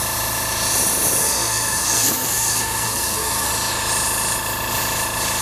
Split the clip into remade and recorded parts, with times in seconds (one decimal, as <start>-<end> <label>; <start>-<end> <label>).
0.0-1.2 recorded; 1.2-3.5 remade; 3.5-5.4 recorded